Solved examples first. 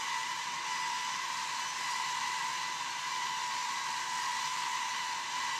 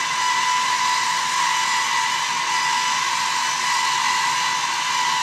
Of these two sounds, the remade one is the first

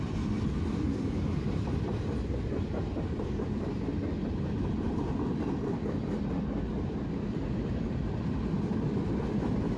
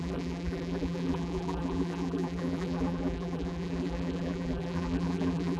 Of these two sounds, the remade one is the second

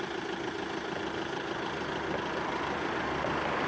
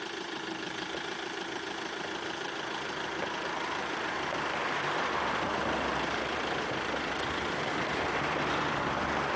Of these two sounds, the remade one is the second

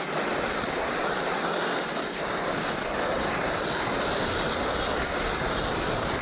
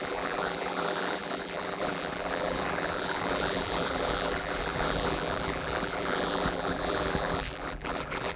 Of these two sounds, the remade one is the second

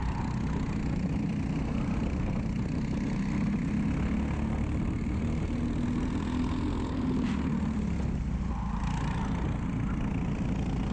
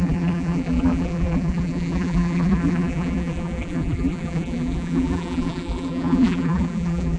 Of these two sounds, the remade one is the second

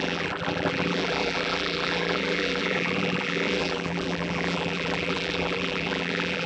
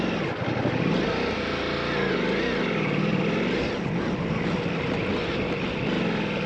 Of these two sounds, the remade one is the first